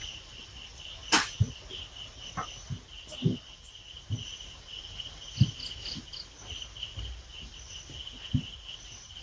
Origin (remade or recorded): recorded